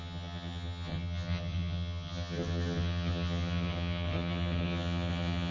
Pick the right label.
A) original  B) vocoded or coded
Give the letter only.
B